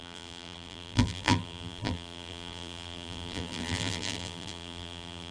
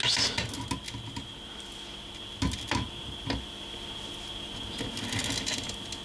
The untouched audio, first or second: second